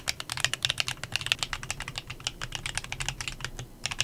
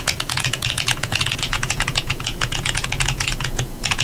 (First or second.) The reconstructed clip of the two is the second